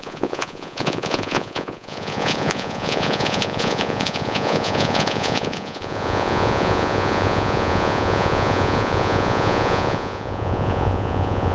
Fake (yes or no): yes